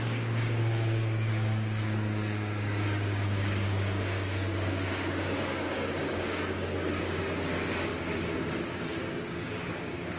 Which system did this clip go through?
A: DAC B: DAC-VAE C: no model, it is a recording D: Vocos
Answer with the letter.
A